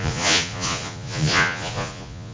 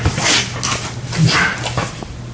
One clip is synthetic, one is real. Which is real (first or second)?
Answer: second